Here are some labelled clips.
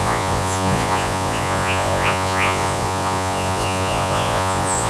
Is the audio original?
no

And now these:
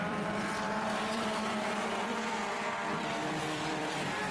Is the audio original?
no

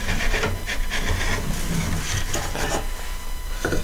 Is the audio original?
yes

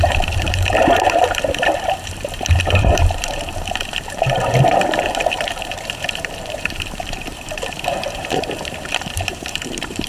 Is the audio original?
no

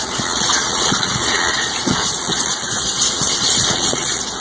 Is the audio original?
no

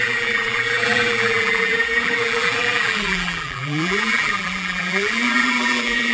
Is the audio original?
no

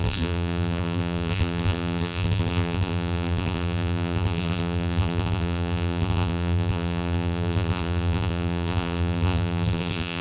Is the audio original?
no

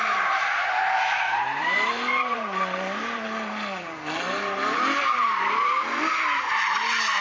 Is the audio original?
no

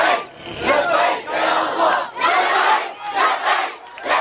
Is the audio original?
yes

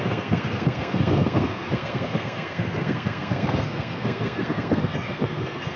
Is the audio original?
no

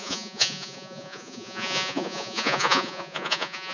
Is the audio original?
no